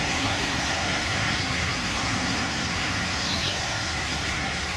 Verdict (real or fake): fake